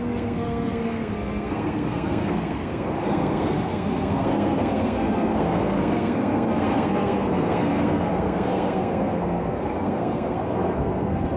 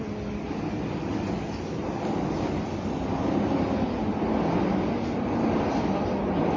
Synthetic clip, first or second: first